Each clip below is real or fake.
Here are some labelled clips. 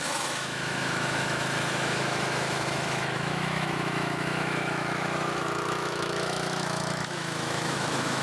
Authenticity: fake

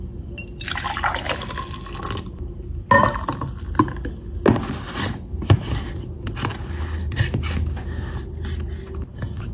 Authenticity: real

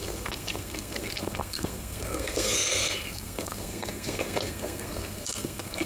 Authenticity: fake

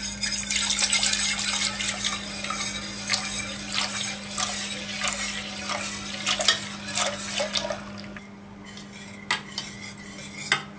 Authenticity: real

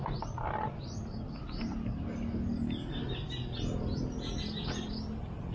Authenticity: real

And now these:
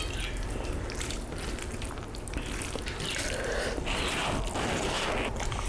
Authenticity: real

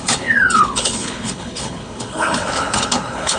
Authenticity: fake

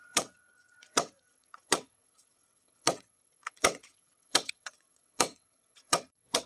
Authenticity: fake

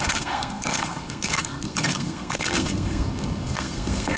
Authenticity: fake